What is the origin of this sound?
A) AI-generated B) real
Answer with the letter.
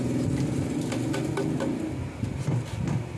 B